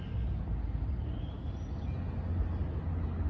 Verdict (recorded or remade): recorded